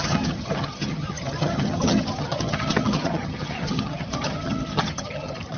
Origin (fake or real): fake